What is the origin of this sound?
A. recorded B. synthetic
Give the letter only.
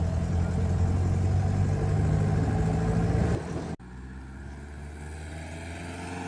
A